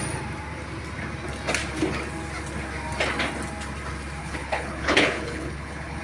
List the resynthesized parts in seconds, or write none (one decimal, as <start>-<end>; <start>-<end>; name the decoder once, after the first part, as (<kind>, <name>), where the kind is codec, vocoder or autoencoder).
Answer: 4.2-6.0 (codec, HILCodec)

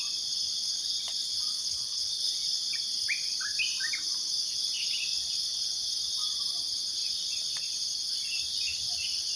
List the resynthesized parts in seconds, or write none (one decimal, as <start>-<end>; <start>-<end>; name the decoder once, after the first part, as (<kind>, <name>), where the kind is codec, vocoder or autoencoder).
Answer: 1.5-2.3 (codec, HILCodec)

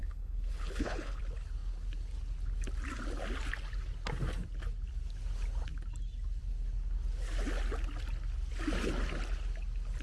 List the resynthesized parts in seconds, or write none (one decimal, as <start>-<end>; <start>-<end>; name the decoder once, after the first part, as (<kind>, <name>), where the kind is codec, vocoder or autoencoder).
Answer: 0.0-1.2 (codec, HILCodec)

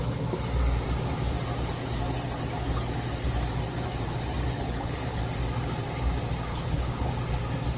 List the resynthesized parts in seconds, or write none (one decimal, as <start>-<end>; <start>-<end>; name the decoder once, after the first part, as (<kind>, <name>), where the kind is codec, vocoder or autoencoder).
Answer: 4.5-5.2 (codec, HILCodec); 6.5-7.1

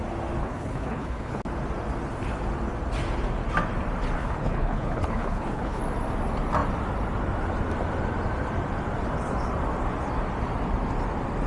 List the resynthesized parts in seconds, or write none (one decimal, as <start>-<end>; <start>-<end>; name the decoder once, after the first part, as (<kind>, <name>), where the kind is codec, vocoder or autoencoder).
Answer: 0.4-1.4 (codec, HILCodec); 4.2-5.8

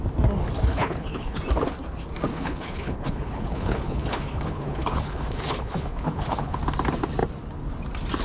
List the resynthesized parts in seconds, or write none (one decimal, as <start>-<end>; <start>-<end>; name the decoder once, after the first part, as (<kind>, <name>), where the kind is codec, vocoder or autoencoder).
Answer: 0.7-1.4 (codec, HILCodec); 2.3-6.6

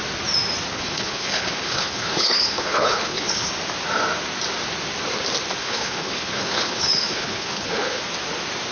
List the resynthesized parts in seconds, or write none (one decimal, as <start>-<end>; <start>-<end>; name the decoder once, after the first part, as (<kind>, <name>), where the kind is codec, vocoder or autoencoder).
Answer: 0.7-3.5 (codec, HILCodec); 5.6-8.0

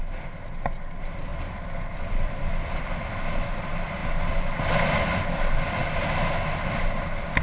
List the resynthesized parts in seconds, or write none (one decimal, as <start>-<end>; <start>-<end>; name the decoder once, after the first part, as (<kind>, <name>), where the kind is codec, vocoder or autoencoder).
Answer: none